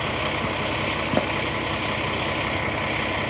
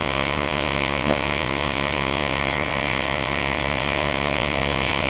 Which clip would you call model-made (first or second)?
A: second